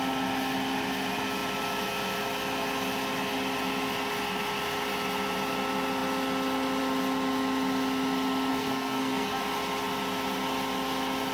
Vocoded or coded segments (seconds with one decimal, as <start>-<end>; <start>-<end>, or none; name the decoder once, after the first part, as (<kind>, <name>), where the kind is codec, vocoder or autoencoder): 8.5-9.4 (codec, SNAC)